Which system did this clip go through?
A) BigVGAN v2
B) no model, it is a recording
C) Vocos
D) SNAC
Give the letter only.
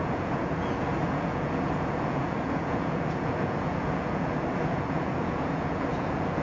C